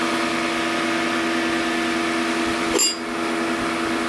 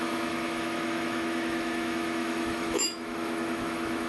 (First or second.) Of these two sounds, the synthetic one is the second